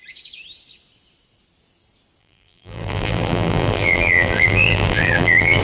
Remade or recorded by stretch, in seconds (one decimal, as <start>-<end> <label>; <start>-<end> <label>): 0.0-2.2 recorded; 2.2-5.6 remade